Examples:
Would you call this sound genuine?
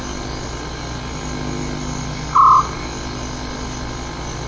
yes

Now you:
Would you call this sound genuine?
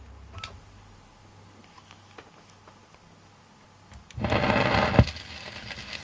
yes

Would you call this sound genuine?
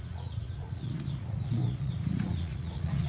no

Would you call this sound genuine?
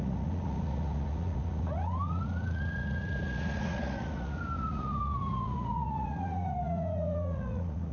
no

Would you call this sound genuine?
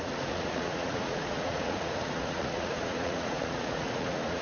no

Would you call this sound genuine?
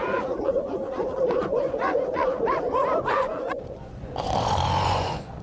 no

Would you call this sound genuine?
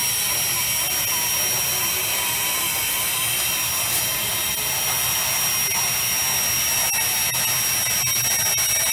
yes